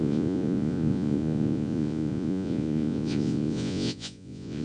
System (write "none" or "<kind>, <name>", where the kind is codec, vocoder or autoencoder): vocoder, Vocos